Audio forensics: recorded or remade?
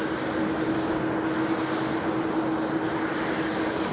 recorded